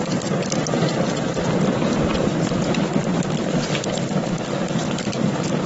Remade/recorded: recorded